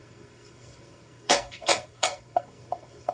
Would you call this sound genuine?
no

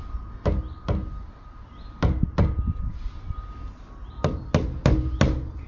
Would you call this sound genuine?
yes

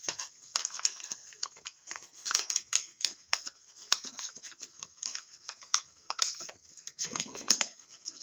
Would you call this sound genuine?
no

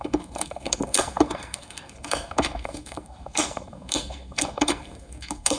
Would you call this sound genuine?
no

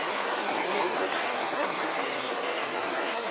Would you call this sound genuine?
no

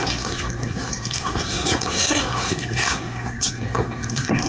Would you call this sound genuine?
no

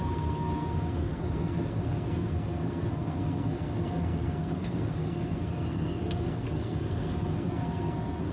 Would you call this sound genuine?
no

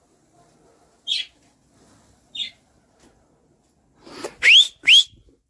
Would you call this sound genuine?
yes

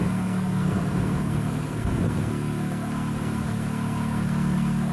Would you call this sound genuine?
no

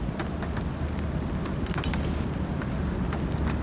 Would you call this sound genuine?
yes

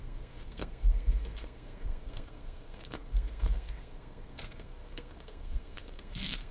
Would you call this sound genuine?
no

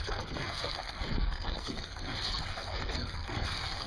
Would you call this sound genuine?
no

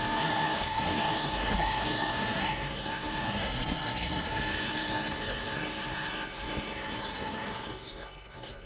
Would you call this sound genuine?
no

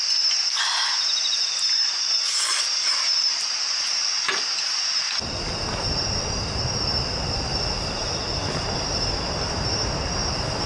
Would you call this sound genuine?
yes